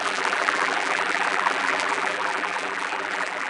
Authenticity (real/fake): fake